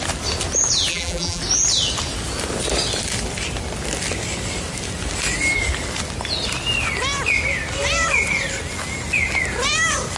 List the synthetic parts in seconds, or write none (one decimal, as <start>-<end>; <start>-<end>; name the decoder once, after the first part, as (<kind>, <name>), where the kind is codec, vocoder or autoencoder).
0.9-1.4 (vocoder, BigVGAN v2)